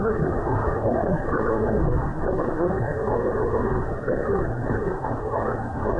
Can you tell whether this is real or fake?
fake